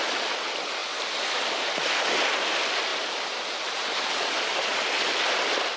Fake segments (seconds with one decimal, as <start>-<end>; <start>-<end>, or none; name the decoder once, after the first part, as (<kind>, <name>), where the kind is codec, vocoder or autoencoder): 2.9-4.1 (vocoder, BigVGAN v2)

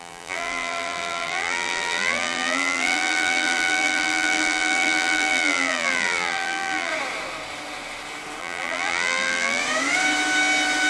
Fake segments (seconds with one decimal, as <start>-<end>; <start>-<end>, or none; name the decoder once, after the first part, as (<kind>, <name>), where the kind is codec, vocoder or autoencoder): 0.0-6.9 (vocoder, BigVGAN v2); 8.4-9.6

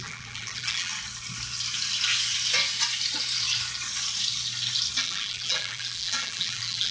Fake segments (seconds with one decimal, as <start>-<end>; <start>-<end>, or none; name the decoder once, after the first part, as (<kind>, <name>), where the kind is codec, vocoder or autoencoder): 0.0-0.9 (vocoder, BigVGAN v2); 5.0-6.9

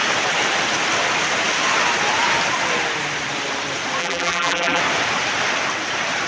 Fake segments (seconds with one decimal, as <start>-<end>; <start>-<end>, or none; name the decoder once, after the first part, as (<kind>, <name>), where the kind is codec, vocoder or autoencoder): 4.0-4.8 (vocoder, BigVGAN v2)

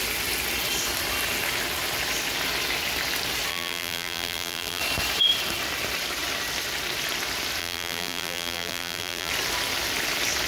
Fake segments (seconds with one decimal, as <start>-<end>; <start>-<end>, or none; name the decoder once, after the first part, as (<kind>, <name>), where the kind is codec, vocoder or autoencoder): 3.5-4.8 (vocoder, BigVGAN v2); 7.6-9.3

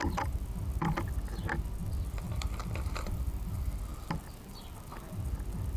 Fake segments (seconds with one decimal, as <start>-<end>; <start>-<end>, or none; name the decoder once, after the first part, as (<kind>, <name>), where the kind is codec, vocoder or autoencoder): 1.8-3.4 (vocoder, BigVGAN v2)

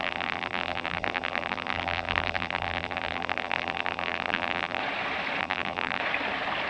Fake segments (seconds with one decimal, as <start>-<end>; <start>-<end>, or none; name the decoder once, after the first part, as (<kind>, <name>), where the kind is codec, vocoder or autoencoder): 0.0-4.8 (vocoder, BigVGAN v2); 5.4-6.0

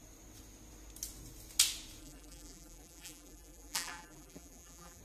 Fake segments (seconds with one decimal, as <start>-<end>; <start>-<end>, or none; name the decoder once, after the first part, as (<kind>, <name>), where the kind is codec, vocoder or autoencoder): 2.0-5.0 (vocoder, BigVGAN v2)